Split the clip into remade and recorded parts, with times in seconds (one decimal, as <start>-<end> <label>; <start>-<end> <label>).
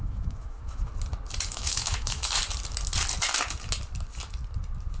0.0-0.9 remade; 0.9-1.5 recorded; 1.5-2.4 remade; 2.4-5.0 recorded